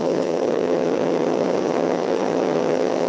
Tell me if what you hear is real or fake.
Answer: fake